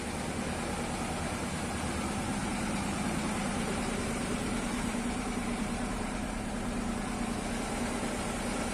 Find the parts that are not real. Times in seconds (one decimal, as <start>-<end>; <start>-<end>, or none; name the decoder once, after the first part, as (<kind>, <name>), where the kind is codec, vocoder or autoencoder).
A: 2.4-6.9 (vocoder, BigVGAN v2)